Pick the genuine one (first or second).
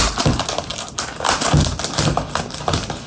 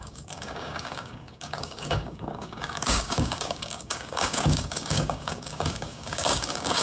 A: first